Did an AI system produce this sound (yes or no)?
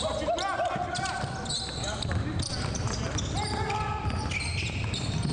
no